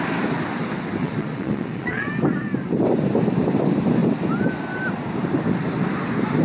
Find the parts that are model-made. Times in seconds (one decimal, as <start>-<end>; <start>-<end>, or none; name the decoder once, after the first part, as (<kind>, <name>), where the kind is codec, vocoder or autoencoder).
1.0-2.1 (vocoder, Vocos)